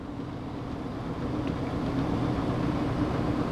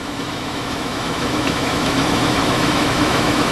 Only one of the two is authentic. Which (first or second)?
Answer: first